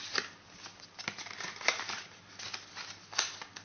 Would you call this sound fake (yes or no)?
no